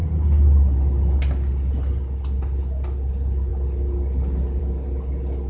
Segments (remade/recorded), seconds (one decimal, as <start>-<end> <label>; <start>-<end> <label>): 0.0-5.5 recorded